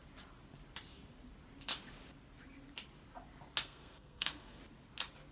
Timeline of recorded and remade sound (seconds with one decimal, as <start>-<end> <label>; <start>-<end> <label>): 0.0-3.6 recorded; 3.6-4.6 remade; 4.6-5.3 recorded